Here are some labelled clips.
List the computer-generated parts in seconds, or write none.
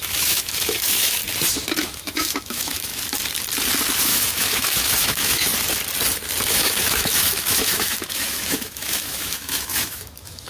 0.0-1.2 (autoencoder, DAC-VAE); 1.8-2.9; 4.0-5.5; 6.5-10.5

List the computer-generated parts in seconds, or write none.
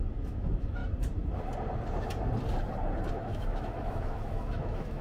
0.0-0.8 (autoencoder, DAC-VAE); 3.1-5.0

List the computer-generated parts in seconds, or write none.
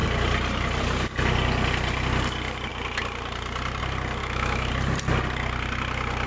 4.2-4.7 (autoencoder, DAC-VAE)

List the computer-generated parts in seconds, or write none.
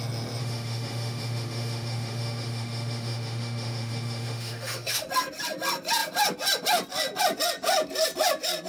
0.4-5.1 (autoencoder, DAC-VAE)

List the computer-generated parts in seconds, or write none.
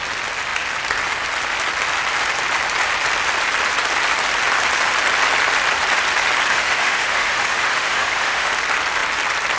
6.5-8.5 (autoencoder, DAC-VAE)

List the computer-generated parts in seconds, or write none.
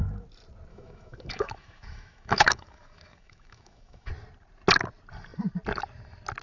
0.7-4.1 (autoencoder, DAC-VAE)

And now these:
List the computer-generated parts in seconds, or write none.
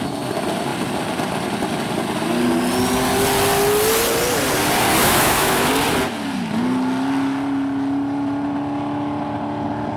5.0-5.7 (autoencoder, DAC-VAE)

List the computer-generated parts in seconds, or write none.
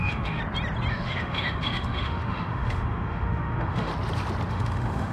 0.0-0.4 (autoencoder, DAC-VAE); 0.9-3.9; 4.5-5.1